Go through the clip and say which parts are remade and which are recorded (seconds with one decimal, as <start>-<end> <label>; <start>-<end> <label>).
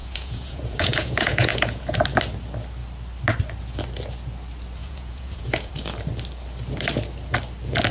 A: 0.0-2.0 remade; 2.0-4.8 recorded; 4.8-5.7 remade; 5.7-7.9 recorded